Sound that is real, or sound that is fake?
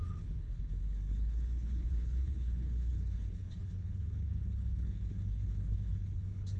fake